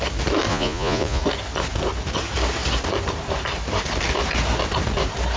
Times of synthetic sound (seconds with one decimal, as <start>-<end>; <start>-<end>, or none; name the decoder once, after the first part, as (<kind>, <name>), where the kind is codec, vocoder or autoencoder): 0.5-1.2 (vocoder, Vocos)

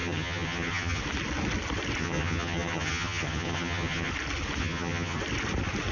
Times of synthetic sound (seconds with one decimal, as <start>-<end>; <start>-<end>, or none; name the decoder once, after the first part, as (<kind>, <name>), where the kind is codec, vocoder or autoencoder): 0.0-1.0 (vocoder, HiFi-GAN); 2.0-4.1; 4.6-5.2

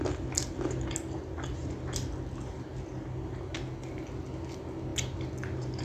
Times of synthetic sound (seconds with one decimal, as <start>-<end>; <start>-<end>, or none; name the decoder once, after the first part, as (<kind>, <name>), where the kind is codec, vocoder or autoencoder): none

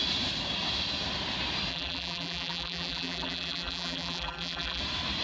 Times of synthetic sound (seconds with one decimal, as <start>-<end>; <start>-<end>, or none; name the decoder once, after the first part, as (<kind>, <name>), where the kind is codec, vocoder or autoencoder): 1.7-4.8 (vocoder, BigVGAN v2)

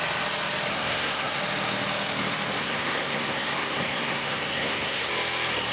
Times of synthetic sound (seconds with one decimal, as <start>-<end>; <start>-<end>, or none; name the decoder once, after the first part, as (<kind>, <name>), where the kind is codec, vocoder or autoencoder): 0.7-1.4 (codec, SNAC); 2.6-5.1

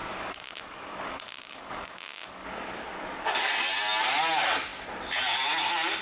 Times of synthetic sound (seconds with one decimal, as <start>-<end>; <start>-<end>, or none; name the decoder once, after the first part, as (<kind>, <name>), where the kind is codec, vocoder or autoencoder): 0.0-3.5 (codec, DAC)

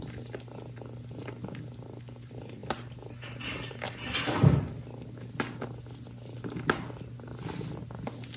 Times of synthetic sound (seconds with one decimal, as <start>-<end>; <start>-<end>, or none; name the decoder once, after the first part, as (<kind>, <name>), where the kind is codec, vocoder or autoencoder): none